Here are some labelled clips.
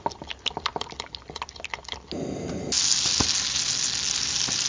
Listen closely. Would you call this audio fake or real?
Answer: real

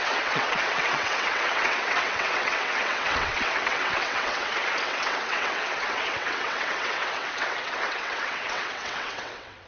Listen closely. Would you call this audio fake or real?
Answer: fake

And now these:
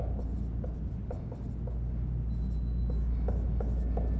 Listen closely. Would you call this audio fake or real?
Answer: real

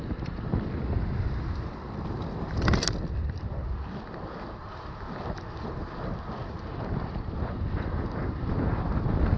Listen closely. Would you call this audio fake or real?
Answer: real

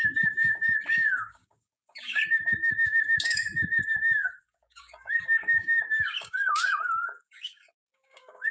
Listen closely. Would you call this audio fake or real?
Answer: fake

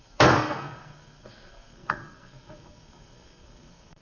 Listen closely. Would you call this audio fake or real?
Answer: fake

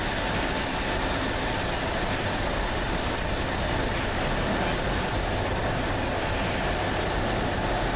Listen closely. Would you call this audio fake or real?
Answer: real